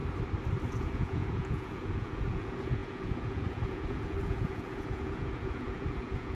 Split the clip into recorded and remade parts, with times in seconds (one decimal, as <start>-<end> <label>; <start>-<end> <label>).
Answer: 0.0-0.7 recorded; 0.7-6.3 remade